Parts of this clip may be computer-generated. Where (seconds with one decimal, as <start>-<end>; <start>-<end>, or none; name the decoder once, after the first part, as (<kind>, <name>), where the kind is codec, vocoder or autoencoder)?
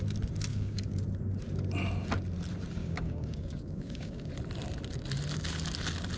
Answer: 0.5-1.0 (codec, DAC); 2.8-4.3